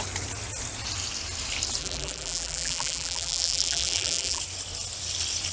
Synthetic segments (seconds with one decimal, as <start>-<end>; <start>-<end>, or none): 1.8-4.4